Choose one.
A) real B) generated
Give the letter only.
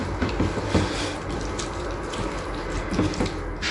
A